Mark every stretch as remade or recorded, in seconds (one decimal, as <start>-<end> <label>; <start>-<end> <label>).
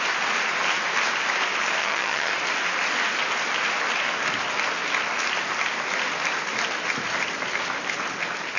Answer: 0.0-1.8 recorded; 1.8-2.3 remade; 2.3-8.6 recorded